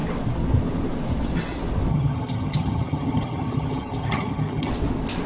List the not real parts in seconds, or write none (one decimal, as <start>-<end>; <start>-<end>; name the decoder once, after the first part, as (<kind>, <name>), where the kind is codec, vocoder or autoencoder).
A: 1.9-4.7 (vocoder, HiFi-GAN)